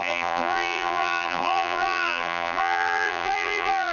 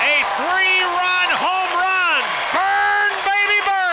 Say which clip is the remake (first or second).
first